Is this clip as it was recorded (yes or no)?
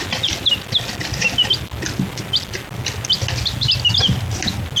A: yes